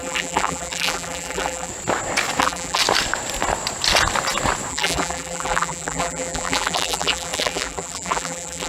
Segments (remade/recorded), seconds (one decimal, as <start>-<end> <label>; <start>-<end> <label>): 0.0-1.7 remade; 1.7-2.4 recorded; 2.4-2.8 remade; 2.8-4.7 recorded; 4.7-8.7 remade